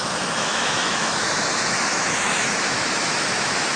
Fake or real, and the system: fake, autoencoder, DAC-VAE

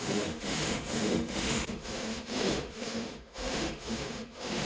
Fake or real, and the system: fake, autoencoder, DAC-VAE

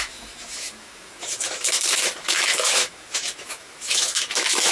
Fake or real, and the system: fake, autoencoder, DAC-VAE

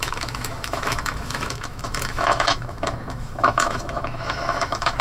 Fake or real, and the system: fake, autoencoder, DAC-VAE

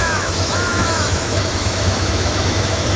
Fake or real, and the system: fake, autoencoder, DAC-VAE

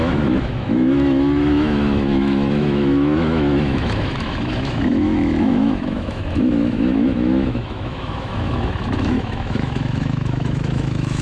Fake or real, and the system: fake, autoencoder, DAC-VAE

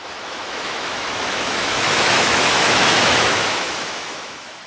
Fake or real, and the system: fake, autoencoder, DAC-VAE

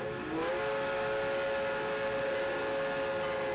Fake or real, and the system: real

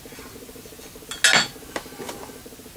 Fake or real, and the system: real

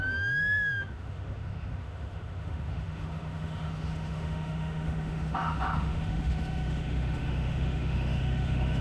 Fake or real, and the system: fake, autoencoder, DAC-VAE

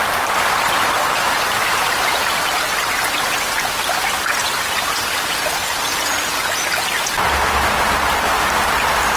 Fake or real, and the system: real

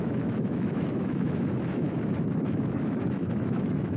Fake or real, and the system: fake, autoencoder, DAC-VAE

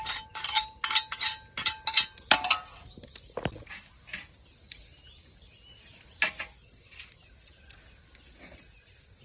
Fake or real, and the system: real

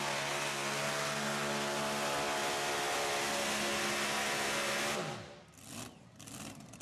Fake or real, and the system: real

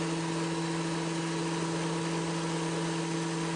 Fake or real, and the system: real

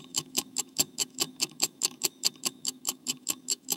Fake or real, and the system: fake, autoencoder, DAC-VAE